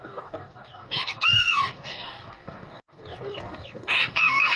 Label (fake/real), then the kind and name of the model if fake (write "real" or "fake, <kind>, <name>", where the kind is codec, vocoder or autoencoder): fake, codec, DAC